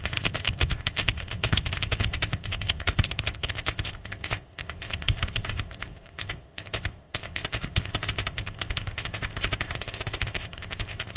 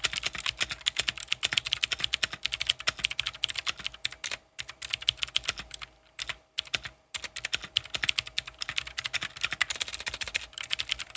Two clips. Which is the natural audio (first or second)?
second